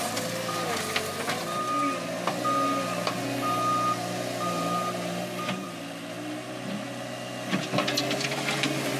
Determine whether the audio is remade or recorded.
recorded